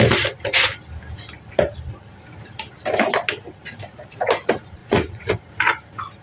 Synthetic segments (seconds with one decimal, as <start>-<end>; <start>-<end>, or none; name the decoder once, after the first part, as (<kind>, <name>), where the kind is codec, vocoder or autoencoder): 4.8-5.5 (vocoder, Vocos)